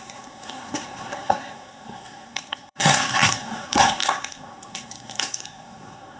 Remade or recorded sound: remade